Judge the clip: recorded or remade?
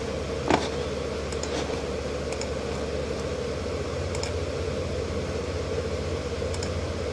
recorded